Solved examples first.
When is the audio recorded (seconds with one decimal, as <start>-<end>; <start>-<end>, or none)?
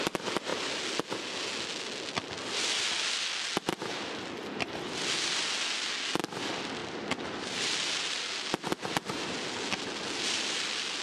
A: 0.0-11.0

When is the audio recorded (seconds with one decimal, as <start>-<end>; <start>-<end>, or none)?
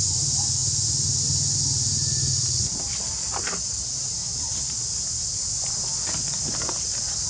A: 0.0-7.3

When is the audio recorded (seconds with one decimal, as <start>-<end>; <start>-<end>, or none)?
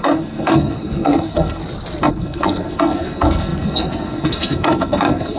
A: 1.6-2.1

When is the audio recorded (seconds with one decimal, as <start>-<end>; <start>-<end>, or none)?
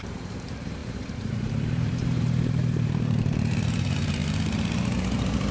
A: 4.2-5.0